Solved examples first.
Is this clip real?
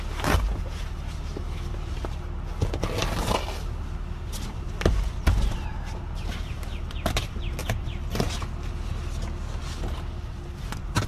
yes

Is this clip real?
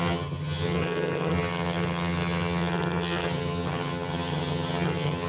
no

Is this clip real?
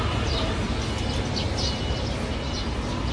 yes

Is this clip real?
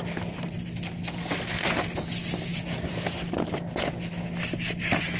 yes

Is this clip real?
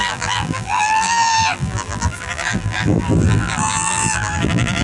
no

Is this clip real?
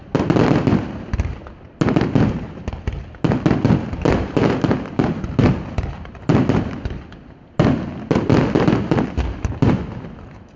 yes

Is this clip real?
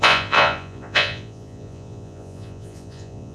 no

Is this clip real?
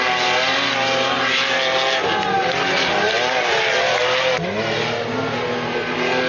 yes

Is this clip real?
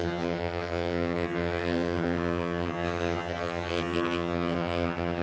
no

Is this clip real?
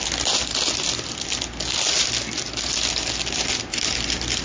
yes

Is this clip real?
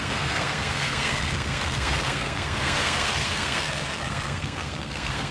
no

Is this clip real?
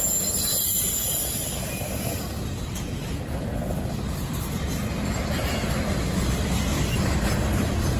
yes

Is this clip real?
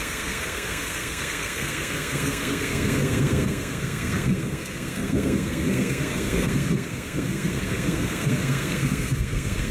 no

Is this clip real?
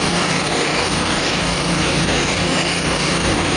no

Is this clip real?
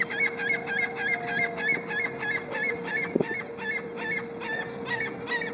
yes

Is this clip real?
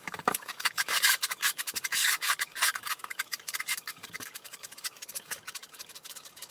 no